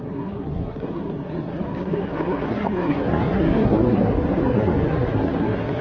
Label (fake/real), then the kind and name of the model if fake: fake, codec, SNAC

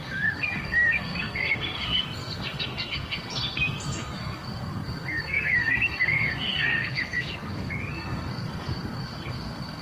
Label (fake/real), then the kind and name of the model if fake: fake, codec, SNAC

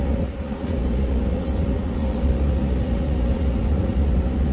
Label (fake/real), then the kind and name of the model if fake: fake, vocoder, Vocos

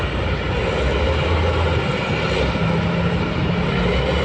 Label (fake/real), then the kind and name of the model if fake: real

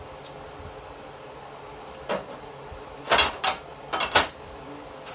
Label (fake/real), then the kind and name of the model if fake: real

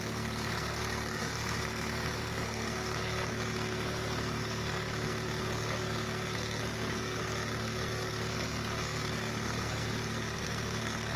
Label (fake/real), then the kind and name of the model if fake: fake, codec, SNAC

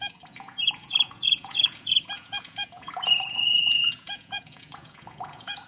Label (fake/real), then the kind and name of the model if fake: fake, vocoder, Vocos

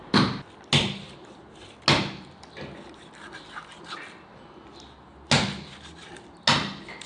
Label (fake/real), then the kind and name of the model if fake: real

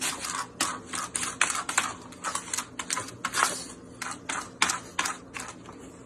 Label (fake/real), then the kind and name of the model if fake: real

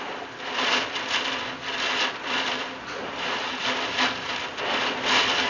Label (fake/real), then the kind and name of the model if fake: real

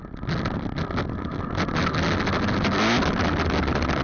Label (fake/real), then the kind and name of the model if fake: real